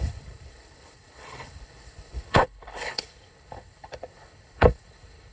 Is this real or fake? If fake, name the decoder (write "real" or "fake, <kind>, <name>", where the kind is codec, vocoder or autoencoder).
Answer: fake, codec, HILCodec